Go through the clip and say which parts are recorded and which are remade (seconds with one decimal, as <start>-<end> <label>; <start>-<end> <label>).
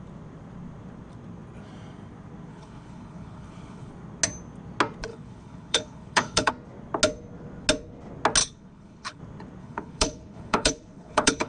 0.0-2.5 recorded; 2.5-3.9 remade; 3.9-5.1 recorded; 5.1-6.5 remade; 6.5-8.4 recorded; 8.4-9.2 remade; 9.2-9.6 recorded; 9.6-11.5 remade